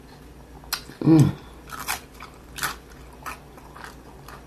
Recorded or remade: recorded